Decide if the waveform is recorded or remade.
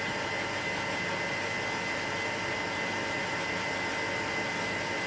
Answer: recorded